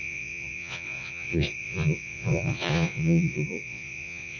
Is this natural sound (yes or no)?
no